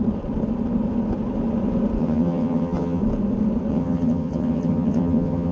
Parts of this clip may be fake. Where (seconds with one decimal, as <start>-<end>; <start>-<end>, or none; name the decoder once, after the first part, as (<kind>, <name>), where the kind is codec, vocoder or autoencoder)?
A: 2.0-3.0 (vocoder, HiFi-GAN); 3.7-5.5